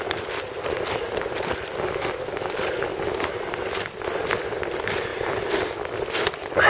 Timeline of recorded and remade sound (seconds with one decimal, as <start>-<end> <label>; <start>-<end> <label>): 0.0-6.7 recorded